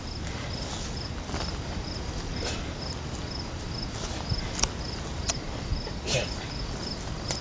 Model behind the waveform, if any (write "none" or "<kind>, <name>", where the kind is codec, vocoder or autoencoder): none